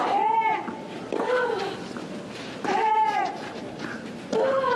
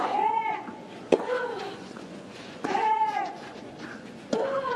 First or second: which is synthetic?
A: second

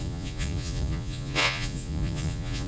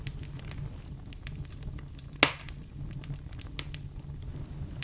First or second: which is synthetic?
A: first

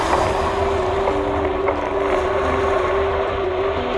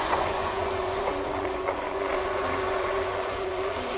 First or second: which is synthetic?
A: second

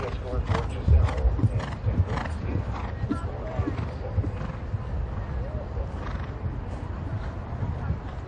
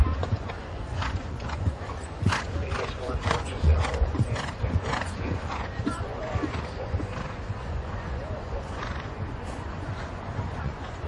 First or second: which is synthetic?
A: second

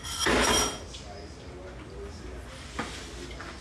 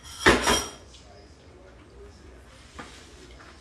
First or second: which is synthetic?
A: second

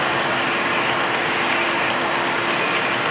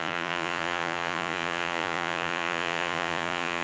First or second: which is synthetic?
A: second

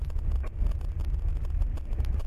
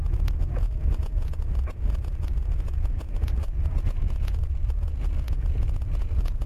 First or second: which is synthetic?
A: second